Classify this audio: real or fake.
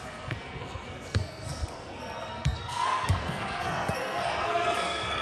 fake